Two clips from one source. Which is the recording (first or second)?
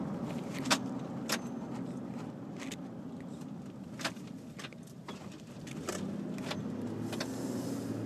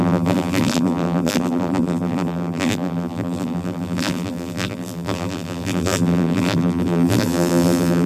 first